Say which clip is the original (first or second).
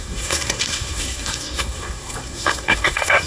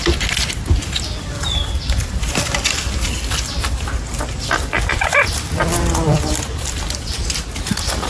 second